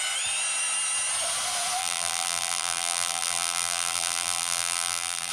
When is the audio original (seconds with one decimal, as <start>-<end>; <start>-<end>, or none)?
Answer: 0.0-1.8